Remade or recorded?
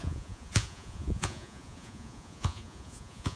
remade